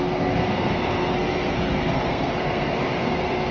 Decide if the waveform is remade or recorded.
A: remade